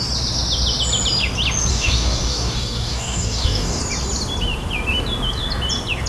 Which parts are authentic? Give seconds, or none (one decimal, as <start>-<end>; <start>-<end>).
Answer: 0.0-1.7; 3.8-6.1